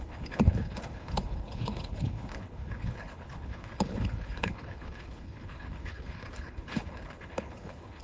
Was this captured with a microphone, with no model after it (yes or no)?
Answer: no